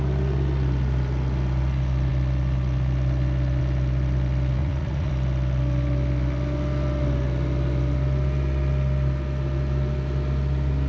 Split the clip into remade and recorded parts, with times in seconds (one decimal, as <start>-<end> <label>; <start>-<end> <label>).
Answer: 0.0-4.6 recorded; 4.6-5.1 remade; 5.1-10.9 recorded